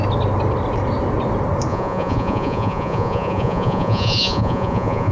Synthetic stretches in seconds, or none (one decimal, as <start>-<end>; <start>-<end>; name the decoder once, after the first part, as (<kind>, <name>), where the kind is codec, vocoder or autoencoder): 1.7-5.1 (vocoder, Vocos)